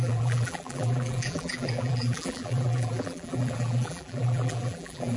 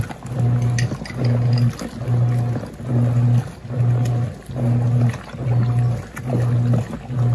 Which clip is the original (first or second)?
second